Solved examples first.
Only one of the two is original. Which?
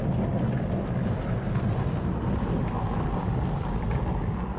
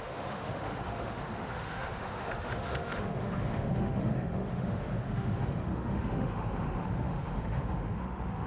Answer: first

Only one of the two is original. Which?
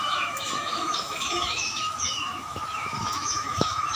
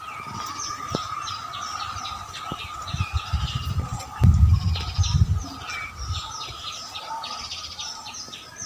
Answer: second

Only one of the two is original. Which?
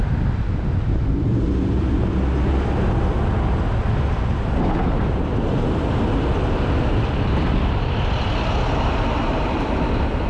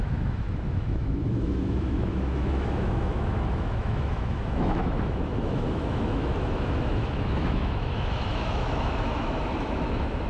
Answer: first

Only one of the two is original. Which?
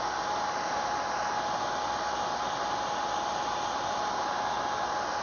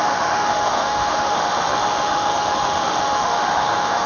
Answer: first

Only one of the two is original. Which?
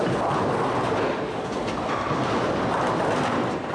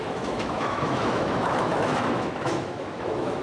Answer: first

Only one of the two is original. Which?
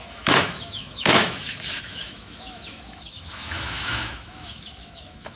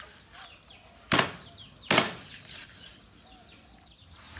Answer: second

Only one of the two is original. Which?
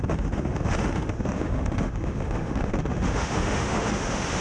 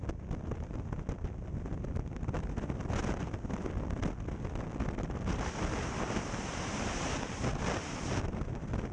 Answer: second